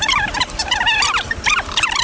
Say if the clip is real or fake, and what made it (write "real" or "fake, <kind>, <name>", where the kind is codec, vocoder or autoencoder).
real